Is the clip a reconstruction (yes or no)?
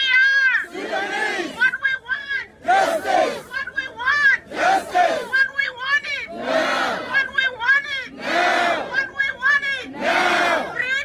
no